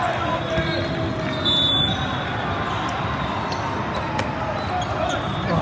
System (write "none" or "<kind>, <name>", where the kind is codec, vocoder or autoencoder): none